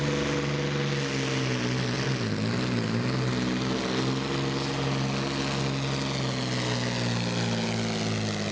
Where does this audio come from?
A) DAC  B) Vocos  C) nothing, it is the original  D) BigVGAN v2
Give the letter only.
C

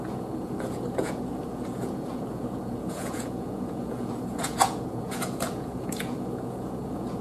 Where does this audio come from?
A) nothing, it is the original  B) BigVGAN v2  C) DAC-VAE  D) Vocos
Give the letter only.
D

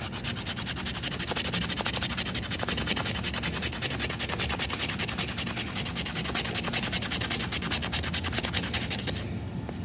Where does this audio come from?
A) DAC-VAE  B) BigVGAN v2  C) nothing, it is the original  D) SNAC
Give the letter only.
C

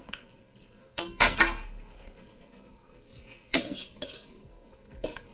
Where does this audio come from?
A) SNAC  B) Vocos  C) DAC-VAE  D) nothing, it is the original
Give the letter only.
A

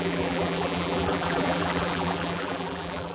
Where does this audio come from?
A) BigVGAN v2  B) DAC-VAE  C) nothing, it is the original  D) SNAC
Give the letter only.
A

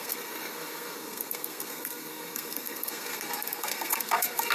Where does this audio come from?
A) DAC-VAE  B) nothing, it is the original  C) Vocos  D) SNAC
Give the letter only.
D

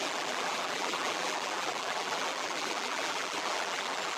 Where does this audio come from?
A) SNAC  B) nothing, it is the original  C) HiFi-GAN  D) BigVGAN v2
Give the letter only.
D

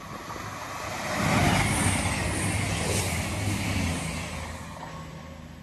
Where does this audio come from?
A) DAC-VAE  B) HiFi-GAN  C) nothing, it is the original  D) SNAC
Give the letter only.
C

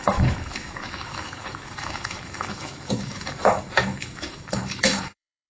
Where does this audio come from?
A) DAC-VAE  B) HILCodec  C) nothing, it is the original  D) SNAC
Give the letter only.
A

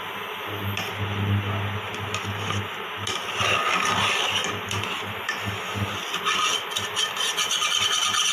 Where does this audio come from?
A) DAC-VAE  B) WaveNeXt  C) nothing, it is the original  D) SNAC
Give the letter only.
C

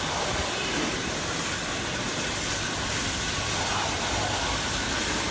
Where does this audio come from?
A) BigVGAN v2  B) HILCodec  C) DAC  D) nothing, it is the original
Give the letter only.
D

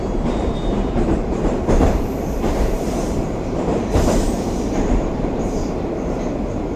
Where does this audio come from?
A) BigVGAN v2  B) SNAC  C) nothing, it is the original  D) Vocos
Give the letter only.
A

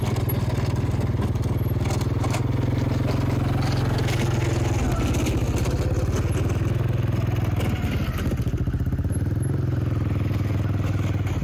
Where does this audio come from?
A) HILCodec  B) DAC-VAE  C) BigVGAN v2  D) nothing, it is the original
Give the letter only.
D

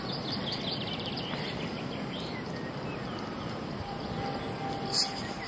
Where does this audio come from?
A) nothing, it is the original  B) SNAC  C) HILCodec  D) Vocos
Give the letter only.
A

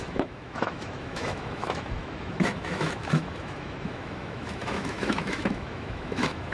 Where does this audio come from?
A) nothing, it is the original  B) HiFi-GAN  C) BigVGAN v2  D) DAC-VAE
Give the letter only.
D